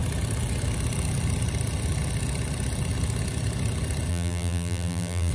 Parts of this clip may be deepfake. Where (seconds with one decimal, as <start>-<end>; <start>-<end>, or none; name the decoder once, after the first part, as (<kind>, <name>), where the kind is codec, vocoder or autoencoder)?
4.1-5.3 (vocoder, BigVGAN v2)